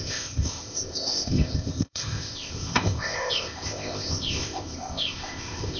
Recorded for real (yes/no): no